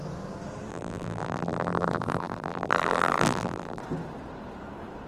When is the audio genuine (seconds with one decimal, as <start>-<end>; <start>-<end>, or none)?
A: 0.0-0.7; 3.8-5.1

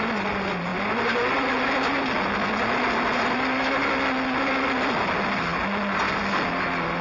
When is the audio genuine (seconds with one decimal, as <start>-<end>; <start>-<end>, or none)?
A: 0.0-7.0